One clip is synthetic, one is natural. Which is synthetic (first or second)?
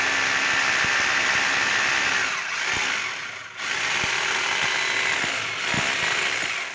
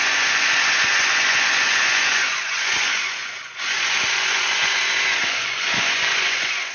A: second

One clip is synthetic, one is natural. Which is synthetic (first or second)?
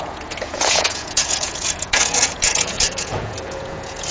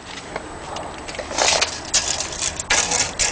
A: first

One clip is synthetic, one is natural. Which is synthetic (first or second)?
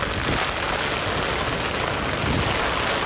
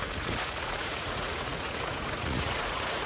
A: second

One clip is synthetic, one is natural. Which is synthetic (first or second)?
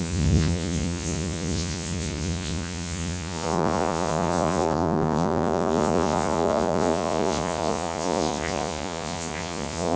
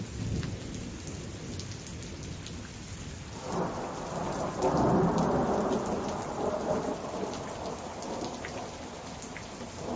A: first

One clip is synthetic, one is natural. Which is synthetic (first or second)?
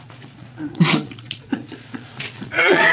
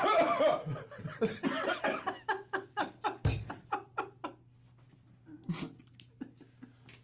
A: first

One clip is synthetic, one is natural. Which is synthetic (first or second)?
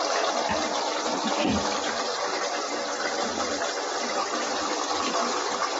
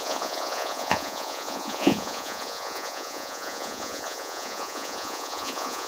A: second